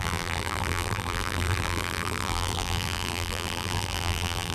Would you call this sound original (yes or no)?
no